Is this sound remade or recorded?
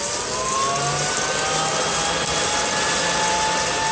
recorded